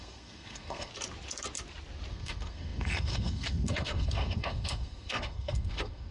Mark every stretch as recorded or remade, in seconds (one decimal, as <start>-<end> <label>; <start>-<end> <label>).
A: 0.0-0.9 remade; 0.9-2.1 recorded; 2.1-6.1 remade